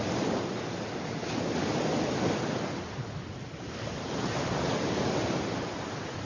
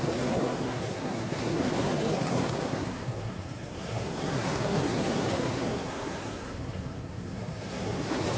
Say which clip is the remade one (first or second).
second